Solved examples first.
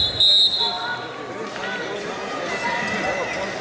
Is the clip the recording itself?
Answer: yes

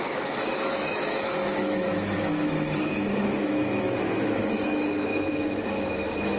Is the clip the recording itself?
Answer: no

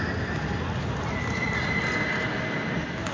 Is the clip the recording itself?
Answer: yes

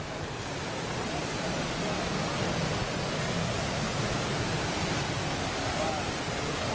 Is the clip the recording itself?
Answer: yes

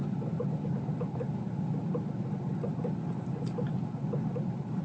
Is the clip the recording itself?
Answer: yes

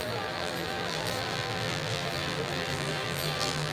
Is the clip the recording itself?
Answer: no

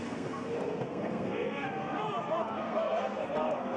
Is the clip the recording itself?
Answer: no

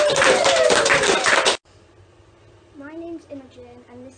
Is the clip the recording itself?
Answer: yes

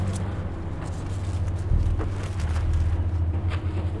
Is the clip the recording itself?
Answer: yes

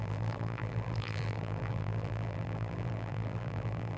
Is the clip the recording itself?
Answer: no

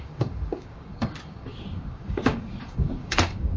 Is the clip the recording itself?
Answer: no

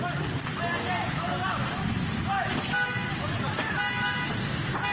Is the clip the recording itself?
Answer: yes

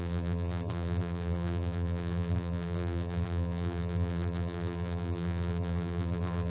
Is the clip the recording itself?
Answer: no